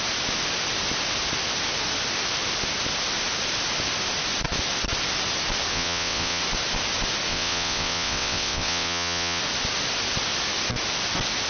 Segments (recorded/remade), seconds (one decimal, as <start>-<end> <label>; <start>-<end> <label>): 0.0-5.7 recorded; 5.7-6.4 remade; 6.4-7.3 recorded; 7.3-9.4 remade; 9.4-11.5 recorded